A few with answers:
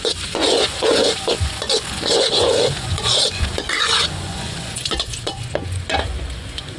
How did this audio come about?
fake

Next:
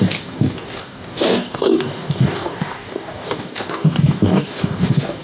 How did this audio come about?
fake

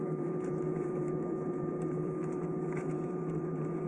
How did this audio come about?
fake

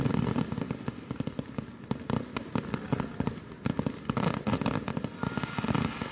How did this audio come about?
real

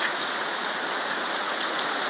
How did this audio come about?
fake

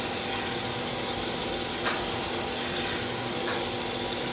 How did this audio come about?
real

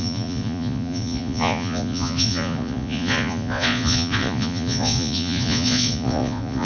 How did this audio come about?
fake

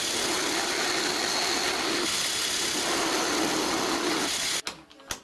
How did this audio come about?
real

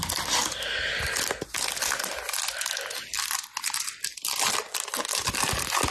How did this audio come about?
real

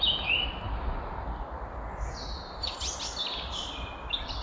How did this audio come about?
real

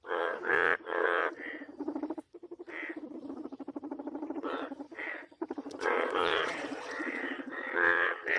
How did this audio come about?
fake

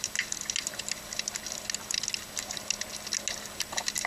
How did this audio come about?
real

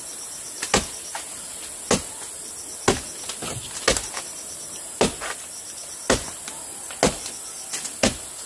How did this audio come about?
real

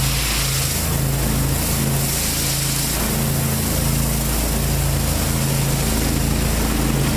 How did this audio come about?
real